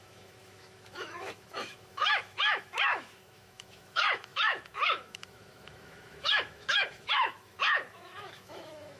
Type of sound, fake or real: fake